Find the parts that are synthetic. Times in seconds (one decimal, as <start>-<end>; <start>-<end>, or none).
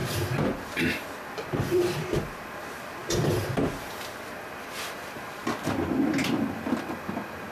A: 0.0-5.4; 6.9-7.5